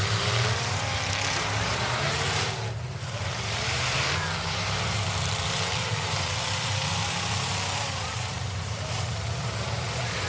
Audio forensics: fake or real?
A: fake